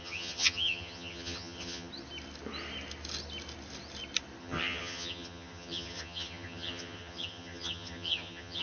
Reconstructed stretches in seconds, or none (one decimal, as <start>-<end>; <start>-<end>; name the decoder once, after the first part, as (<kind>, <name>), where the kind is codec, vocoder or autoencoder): 0.0-1.9 (vocoder, HiFi-GAN); 4.4-8.6